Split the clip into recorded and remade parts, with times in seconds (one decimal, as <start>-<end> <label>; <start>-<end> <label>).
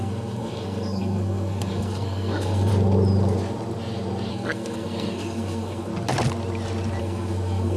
0.0-2.7 remade; 2.7-4.3 recorded; 4.3-5.9 remade; 5.9-7.0 recorded; 7.0-7.8 remade